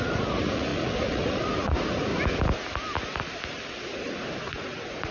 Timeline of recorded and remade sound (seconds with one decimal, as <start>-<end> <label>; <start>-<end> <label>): 0.0-2.1 remade; 2.1-4.4 recorded; 4.4-5.1 remade